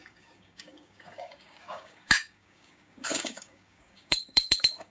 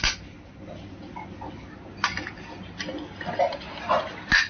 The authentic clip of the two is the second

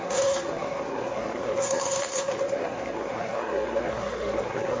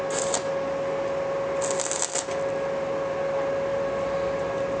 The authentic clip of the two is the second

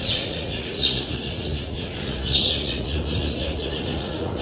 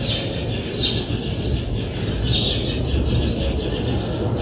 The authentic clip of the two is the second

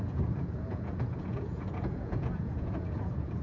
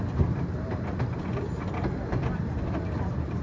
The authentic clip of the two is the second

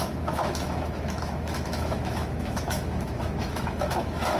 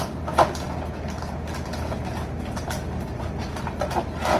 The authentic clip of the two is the second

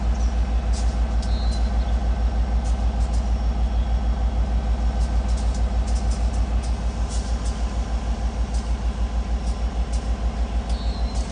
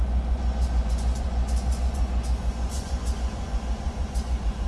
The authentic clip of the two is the first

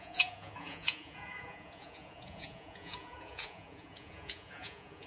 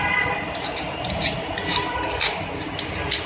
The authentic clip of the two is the second